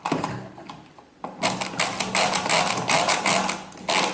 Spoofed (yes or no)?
no